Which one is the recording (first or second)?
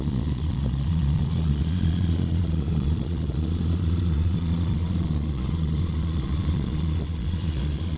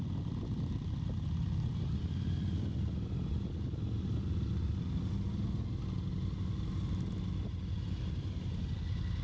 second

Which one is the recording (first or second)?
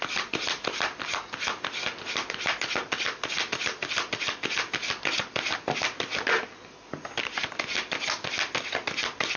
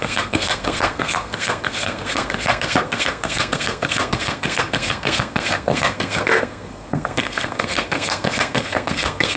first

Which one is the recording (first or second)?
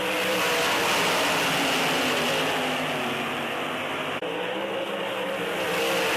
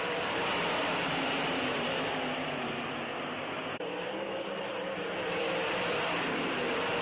first